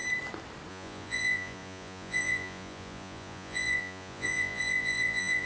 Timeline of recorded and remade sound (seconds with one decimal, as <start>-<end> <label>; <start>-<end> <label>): 0.0-0.7 recorded; 0.7-5.5 remade